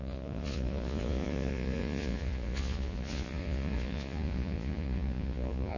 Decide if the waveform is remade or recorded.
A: remade